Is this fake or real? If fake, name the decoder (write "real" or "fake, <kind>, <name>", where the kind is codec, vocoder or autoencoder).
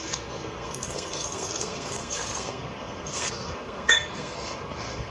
fake, codec, SNAC